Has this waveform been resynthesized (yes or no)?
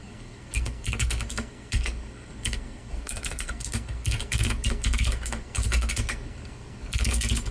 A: yes